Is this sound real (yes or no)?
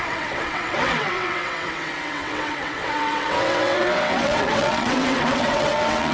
no